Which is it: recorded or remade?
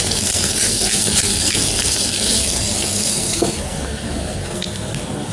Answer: remade